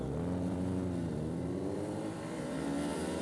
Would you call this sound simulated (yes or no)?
yes